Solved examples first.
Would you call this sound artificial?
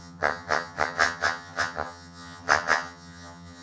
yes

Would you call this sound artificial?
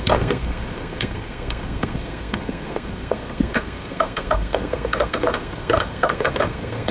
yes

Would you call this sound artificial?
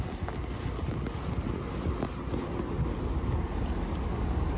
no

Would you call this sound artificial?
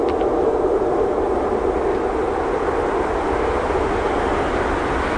no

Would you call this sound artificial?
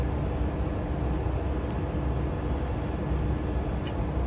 no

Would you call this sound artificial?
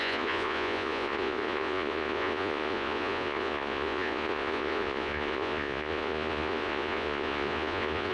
yes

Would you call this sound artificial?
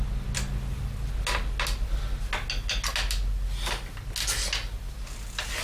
no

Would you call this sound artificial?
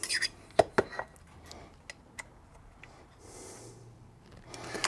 no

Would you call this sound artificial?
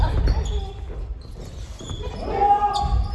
no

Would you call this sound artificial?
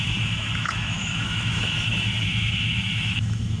yes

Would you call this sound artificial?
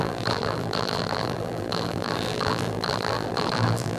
yes